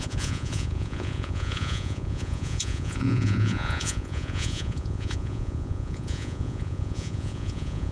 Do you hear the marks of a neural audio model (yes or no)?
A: yes